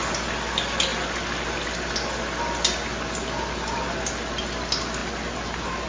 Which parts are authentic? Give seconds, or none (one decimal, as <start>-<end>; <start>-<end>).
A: 0.0-5.9